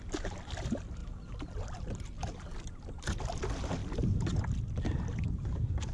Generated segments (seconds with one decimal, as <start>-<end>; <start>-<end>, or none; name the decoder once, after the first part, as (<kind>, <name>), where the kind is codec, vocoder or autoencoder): 0.0-1.0 (vocoder, BigVGAN v2); 3.2-3.8; 4.4-5.9